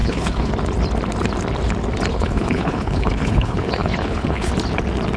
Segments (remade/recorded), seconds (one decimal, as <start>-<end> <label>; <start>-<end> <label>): 0.0-0.5 remade; 0.5-2.1 recorded; 2.1-4.5 remade; 4.5-5.2 recorded